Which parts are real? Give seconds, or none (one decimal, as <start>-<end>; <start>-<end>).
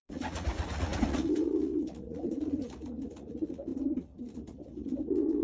none